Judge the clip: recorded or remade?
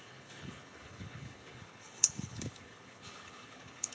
remade